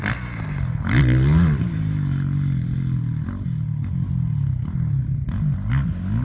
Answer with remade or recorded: recorded